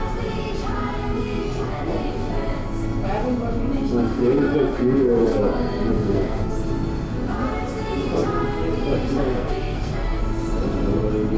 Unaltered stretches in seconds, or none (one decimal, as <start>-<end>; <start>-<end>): 0.0-1.0; 1.8-4.0; 6.5-9.3; 10.2-11.4

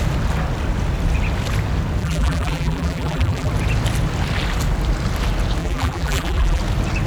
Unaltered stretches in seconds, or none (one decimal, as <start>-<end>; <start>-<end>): 0.0-2.0; 3.5-5.6; 6.6-7.1

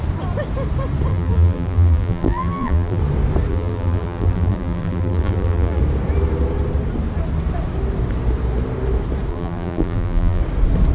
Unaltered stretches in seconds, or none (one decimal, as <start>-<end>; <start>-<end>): 0.0-1.1; 3.0-3.5; 5.8-9.3; 10.4-10.9